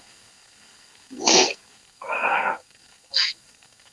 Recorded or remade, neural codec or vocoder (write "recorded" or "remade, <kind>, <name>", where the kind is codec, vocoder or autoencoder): remade, codec, SNAC